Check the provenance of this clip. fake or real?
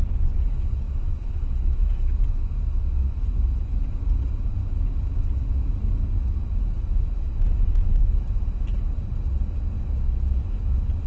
real